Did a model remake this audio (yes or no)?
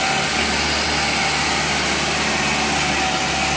no